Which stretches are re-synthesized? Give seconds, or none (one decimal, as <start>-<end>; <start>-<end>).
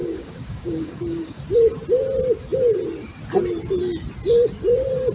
0.0-1.4